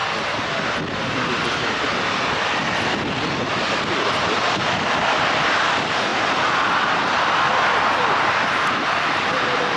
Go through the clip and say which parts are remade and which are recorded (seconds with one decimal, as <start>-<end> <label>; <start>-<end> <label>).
0.0-4.1 recorded; 4.1-6.1 remade; 6.1-7.2 recorded; 7.2-9.8 remade